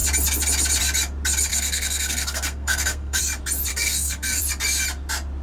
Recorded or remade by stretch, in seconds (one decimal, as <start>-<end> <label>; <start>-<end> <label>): 0.0-1.5 recorded; 1.5-3.2 remade; 3.2-3.7 recorded; 3.7-4.4 remade; 4.4-5.4 recorded